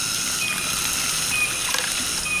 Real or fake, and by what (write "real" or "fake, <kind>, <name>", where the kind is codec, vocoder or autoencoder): real